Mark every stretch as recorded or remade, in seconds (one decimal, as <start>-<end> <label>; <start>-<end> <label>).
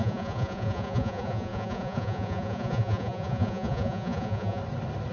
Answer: 0.0-4.6 remade; 4.6-5.1 recorded